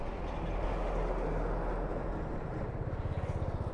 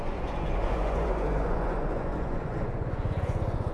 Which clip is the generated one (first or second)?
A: second